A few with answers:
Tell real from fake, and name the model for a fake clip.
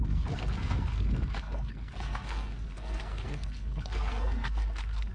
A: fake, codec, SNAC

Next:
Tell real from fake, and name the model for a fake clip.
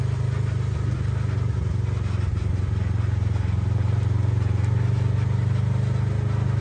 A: real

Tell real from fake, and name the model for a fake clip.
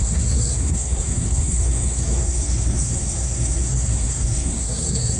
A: fake, codec, SNAC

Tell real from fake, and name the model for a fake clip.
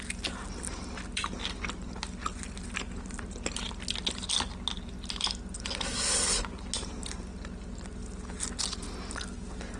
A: real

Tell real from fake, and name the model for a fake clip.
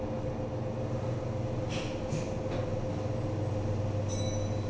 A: real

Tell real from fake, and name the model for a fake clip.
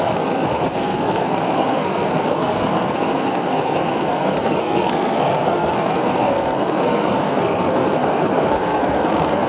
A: fake, codec, SNAC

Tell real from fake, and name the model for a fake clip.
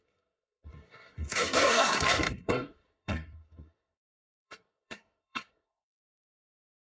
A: fake, codec, SNAC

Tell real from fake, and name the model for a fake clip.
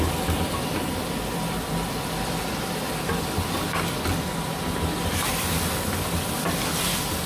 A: real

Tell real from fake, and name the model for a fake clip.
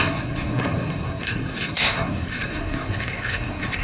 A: fake, codec, SNAC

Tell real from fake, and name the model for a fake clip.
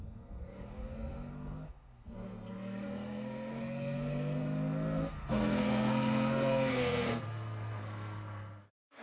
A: fake, codec, SNAC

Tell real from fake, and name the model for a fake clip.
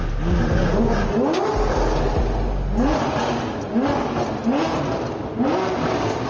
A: real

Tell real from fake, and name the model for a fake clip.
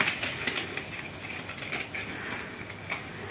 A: real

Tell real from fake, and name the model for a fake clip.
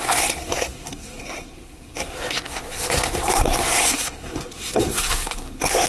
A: fake, codec, SNAC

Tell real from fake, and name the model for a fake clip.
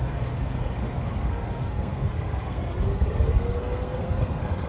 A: fake, codec, SNAC